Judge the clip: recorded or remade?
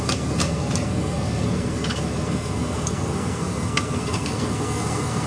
remade